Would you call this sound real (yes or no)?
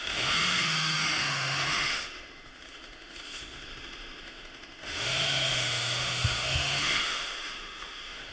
no